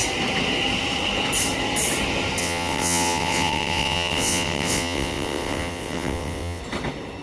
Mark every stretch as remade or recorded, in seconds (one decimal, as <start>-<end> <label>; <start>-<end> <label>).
0.0-2.4 recorded; 2.4-6.6 remade; 6.6-7.2 recorded